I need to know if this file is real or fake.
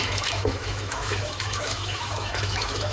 fake